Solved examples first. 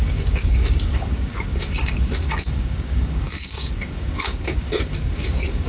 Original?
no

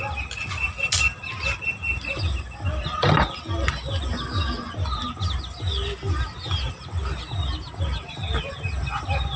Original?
yes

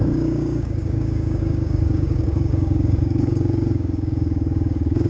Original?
no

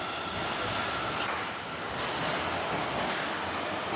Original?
yes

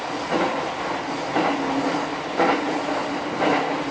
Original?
yes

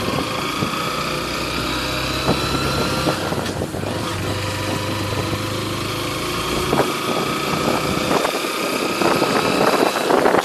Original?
yes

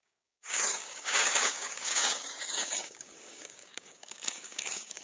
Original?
no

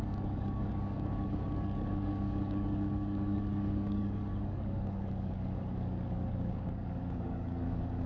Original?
no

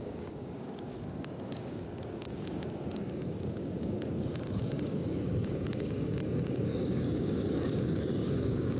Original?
no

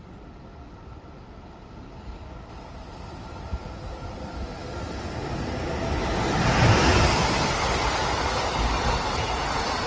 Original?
yes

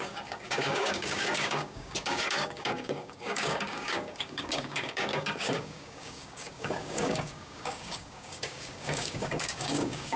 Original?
no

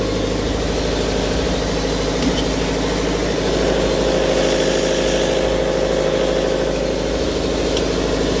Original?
yes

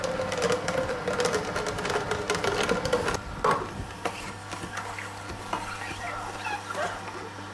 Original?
yes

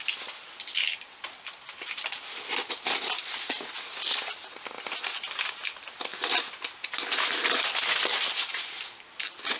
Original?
yes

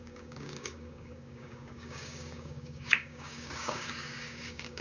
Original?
no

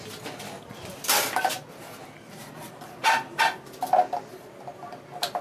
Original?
yes